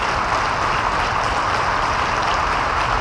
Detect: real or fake real